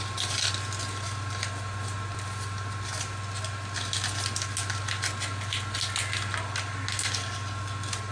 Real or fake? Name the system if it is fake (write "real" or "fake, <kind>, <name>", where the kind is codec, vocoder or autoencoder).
real